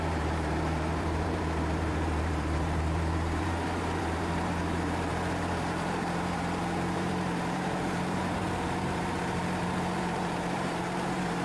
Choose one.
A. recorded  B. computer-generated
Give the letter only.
B